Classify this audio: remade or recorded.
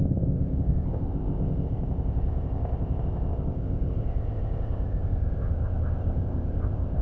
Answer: remade